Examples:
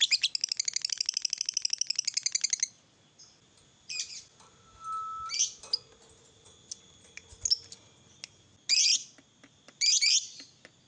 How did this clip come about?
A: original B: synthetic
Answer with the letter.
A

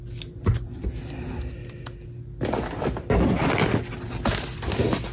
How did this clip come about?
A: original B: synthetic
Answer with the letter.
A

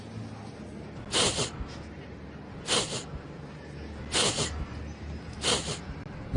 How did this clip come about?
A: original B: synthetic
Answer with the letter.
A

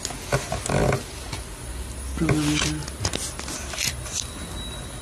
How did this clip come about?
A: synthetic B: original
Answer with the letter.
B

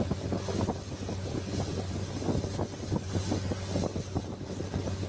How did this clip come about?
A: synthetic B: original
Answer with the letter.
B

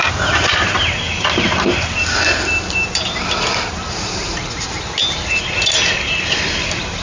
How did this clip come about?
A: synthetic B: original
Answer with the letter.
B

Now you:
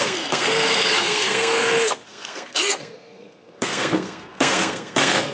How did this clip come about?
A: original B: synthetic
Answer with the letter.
B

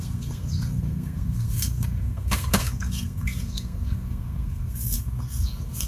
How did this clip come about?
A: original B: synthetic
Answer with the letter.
B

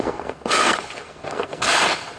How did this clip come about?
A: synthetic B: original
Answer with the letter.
A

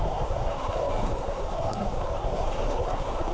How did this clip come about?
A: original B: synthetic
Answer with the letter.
B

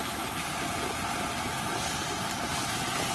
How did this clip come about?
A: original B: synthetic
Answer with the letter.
A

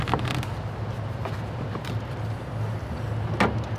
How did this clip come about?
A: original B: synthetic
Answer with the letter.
A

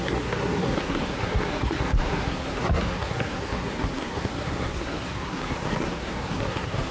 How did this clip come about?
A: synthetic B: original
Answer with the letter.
A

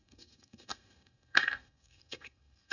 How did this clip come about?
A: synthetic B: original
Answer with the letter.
A